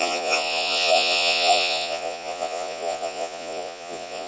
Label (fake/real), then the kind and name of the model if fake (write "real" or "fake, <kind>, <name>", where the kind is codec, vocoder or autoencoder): fake, vocoder, Vocos